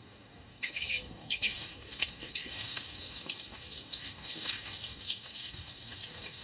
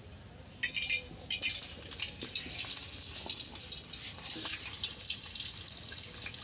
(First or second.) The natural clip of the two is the second